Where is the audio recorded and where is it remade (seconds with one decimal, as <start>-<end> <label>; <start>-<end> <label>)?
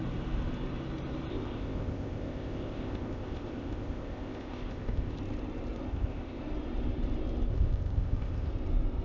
0.0-1.3 recorded; 1.3-5.2 remade; 5.2-5.9 recorded; 5.9-6.4 remade; 6.4-7.5 recorded; 7.5-8.5 remade; 8.5-9.0 recorded